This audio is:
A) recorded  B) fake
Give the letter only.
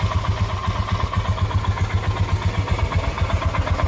A